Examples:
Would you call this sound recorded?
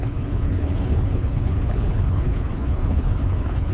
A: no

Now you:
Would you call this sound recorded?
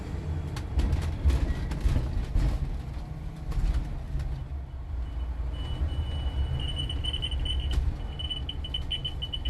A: yes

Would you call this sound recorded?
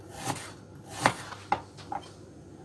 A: yes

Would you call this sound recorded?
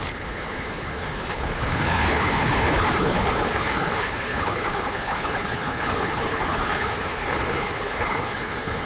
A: no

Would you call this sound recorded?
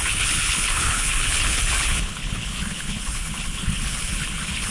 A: no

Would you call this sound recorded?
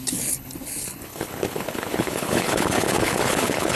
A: no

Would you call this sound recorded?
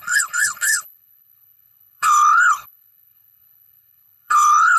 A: no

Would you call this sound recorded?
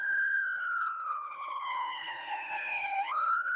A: no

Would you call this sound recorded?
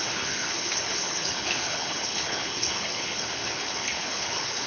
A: no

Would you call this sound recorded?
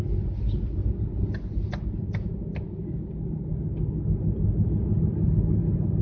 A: yes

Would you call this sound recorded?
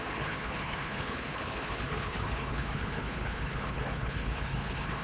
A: no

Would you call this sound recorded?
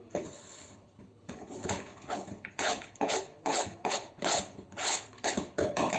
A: no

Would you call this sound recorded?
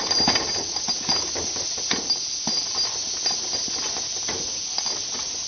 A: yes